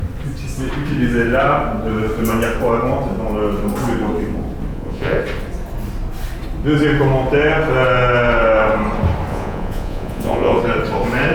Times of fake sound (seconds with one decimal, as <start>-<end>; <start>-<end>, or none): 4.7-5.2; 9.3-10.6